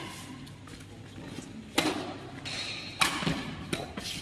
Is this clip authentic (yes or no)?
yes